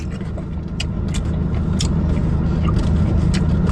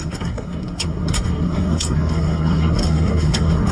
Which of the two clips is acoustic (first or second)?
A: first